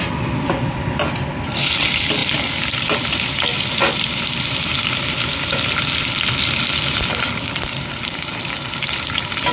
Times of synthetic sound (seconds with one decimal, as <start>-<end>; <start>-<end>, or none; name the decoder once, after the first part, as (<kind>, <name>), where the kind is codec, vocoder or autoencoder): none